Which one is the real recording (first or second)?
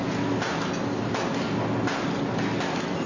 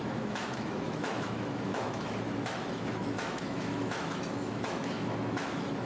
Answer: first